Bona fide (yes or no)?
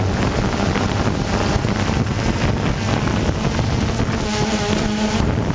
yes